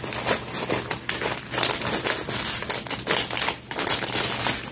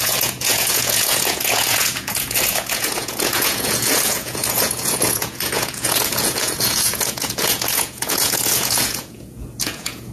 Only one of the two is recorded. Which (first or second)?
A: first